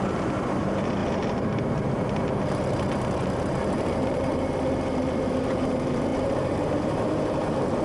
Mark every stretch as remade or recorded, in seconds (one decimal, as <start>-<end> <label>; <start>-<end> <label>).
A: 0.0-7.8 remade